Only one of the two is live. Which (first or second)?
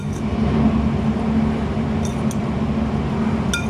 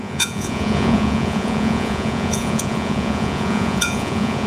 first